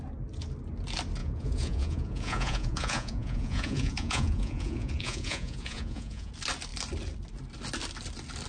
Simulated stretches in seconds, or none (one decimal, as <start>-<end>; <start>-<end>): 1.2-6.3